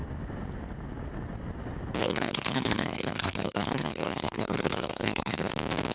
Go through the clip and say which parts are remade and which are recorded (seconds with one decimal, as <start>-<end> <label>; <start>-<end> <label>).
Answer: 0.0-2.0 recorded; 2.0-5.5 remade; 5.5-5.9 recorded